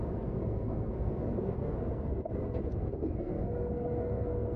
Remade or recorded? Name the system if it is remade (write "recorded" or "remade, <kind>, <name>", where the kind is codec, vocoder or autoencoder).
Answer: remade, codec, SNAC